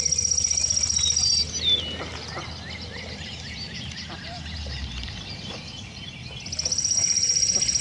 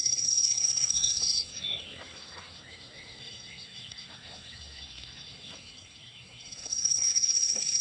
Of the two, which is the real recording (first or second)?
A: first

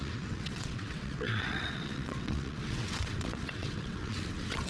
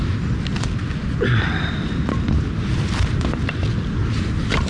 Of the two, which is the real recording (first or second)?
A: second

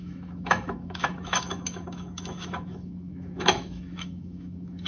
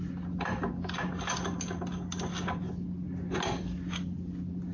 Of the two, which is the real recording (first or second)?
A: second